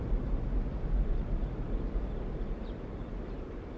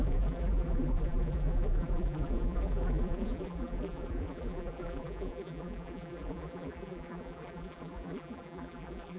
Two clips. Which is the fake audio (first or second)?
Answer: second